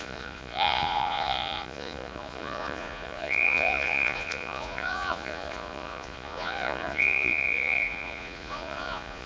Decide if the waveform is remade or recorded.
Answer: remade